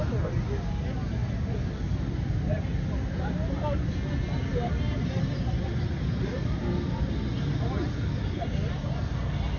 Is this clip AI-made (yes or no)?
no